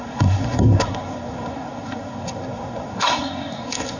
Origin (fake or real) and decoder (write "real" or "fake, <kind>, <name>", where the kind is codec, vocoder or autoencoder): fake, codec, SNAC